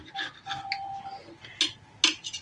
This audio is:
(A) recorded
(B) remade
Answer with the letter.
A